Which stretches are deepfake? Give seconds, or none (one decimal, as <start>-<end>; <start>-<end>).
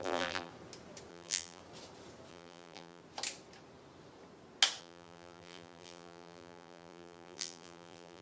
0.0-0.5; 1.1-1.6; 2.3-3.0; 4.8-8.2